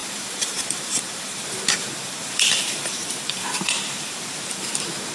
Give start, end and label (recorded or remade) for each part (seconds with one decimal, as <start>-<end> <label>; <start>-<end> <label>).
0.0-5.1 remade